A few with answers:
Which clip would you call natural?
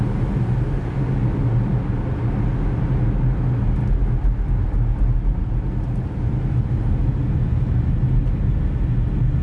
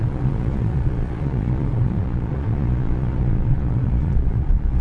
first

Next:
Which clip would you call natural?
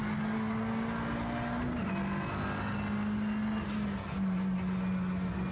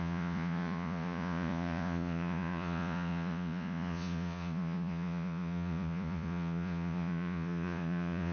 first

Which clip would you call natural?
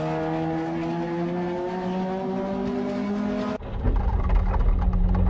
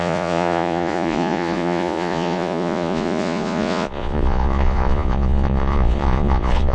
first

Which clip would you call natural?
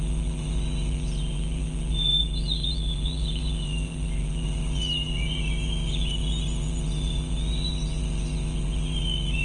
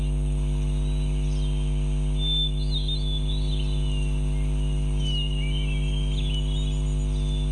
second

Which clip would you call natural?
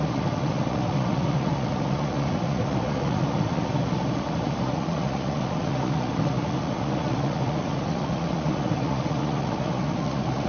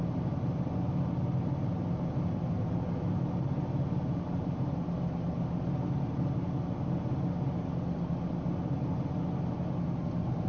second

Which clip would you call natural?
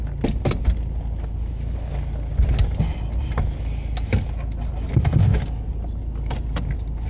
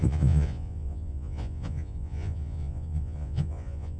first